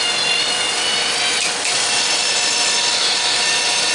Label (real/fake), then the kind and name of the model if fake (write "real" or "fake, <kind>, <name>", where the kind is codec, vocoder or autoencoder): real